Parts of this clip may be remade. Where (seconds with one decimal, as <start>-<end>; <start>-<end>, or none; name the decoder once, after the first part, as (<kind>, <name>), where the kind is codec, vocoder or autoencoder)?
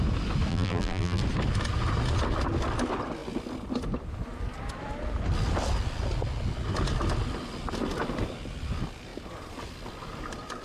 0.5-1.2 (vocoder, BigVGAN v2)